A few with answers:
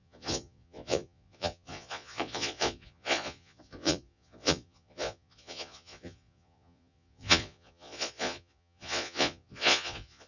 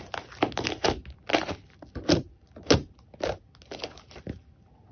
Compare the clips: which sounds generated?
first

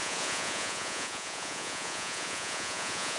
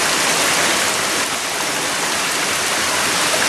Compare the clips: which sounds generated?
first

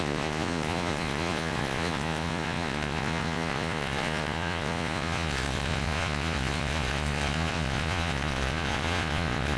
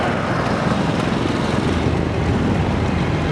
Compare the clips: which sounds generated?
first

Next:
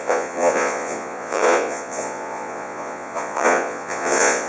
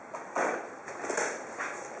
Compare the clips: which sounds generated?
first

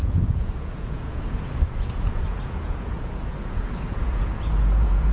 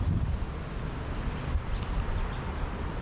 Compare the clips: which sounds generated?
first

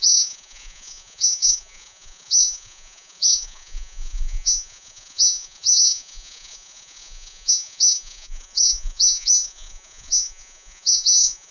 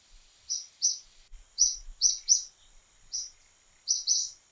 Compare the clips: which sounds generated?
first